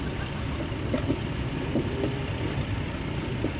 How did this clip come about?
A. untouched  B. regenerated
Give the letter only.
B